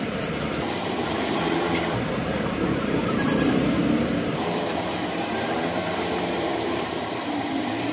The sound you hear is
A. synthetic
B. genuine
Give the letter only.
A